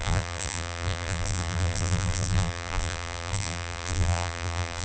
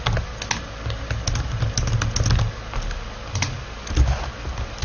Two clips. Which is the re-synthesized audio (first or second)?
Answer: first